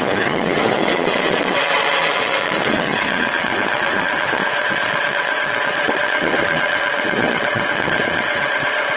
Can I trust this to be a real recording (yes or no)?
no